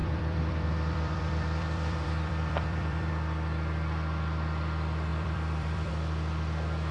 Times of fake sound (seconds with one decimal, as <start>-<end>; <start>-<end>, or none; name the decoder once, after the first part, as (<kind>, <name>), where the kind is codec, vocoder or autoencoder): 0.0-3.1 (vocoder, BigVGAN v2); 5.1-5.9